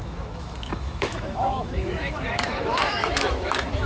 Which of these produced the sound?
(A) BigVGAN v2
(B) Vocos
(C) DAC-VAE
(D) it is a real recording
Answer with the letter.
C